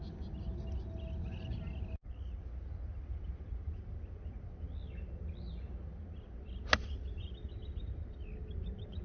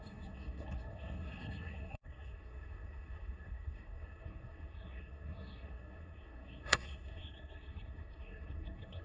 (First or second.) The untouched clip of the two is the first